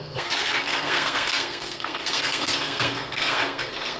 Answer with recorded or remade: remade